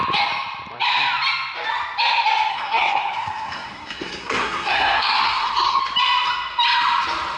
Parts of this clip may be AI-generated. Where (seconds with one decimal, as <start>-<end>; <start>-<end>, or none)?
2.5-5.8